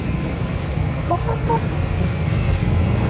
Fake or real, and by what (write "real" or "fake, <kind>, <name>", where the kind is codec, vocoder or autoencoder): fake, codec, SNAC